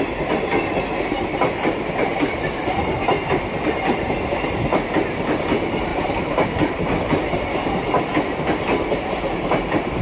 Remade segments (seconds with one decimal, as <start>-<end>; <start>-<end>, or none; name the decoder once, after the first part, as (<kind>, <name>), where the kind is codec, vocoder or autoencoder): none

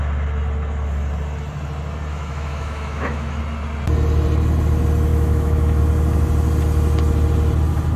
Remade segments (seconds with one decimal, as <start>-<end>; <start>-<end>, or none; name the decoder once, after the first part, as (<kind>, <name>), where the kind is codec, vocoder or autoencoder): 2.1-3.4 (autoencoder, DAC-VAE); 5.1-5.8

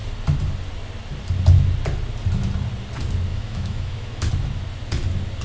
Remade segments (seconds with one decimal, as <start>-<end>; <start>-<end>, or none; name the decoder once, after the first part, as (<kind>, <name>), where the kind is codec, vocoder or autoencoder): 3.3-4.3 (autoencoder, DAC-VAE)

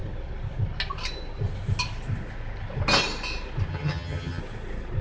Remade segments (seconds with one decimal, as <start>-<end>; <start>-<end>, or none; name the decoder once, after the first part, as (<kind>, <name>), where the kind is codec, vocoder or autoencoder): 3.7-4.4 (vocoder, HiFi-GAN)

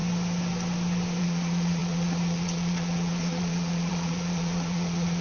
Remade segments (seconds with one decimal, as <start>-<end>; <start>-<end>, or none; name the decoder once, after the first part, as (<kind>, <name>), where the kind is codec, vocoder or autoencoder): 1.2-5.2 (vocoder, Vocos)

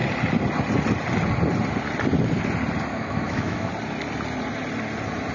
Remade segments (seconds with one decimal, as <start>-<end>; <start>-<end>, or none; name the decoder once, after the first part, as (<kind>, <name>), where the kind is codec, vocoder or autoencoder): 2.9-3.7 (autoencoder, DAC-VAE)